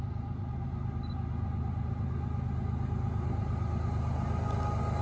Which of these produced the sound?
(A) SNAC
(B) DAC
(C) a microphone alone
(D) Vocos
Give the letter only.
C